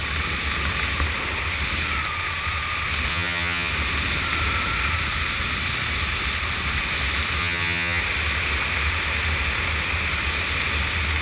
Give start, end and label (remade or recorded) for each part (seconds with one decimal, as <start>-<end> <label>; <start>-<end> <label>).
0.0-3.1 recorded; 3.1-3.7 remade; 3.7-7.4 recorded; 7.4-8.0 remade; 8.0-11.2 recorded